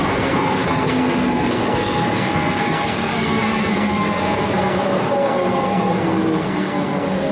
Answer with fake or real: fake